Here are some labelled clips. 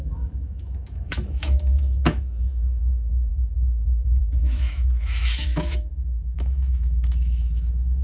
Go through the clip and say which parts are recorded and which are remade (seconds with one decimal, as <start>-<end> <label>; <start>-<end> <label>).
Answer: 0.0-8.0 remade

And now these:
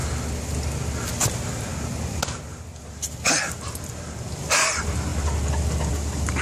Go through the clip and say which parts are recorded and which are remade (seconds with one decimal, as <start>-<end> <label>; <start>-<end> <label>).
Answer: 0.0-6.4 recorded

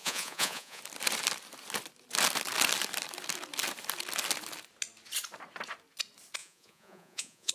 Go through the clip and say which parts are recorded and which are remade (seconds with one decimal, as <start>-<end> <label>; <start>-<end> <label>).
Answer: 0.0-0.8 remade; 0.8-6.4 recorded; 6.4-7.5 remade